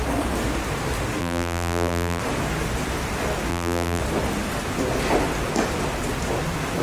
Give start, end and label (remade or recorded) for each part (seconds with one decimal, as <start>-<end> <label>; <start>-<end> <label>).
0.0-1.2 recorded; 1.2-2.2 remade; 2.2-3.5 recorded; 3.5-4.0 remade; 4.0-6.8 recorded